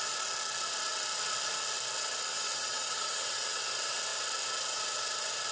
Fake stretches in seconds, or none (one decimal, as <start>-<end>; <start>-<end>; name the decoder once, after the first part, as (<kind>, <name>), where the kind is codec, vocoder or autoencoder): 2.3-3.6 (vocoder, WaveNeXt)